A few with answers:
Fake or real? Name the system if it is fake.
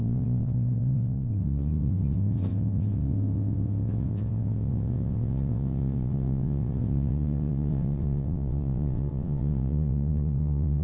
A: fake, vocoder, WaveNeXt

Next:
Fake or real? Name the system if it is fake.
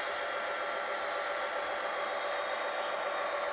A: real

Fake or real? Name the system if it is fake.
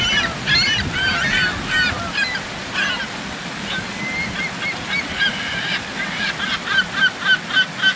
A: real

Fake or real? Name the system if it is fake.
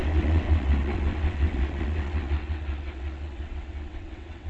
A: fake, vocoder, WaveNeXt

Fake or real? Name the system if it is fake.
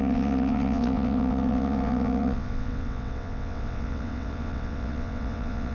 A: fake, vocoder, WaveNeXt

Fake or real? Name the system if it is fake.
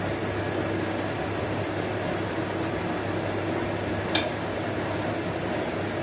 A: real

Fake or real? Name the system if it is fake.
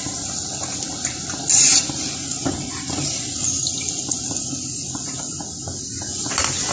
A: real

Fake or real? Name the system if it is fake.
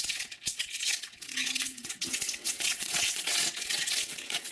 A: fake, vocoder, WaveNeXt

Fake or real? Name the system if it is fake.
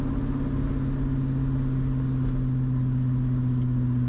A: real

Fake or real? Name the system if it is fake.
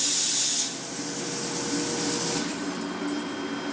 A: real